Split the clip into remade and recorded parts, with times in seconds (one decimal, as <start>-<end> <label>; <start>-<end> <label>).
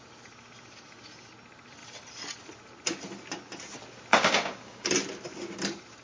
0.0-4.1 recorded; 4.1-4.9 remade; 4.9-6.0 recorded